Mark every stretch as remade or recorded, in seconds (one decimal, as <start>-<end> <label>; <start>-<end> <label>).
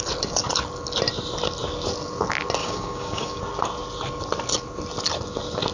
0.0-2.6 recorded; 2.6-3.4 remade; 3.4-5.7 recorded